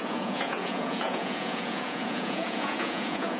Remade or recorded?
remade